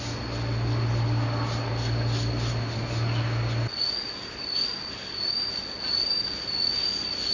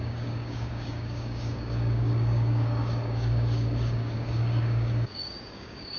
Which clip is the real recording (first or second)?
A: first